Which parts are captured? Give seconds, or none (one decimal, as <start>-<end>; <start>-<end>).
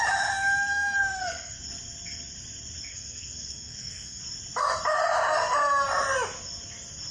0.0-0.7; 1.6-2.9; 4.2-7.1